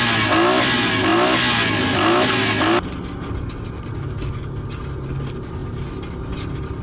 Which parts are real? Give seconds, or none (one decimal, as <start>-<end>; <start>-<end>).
0.0-6.8